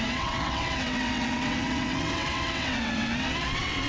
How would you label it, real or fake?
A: fake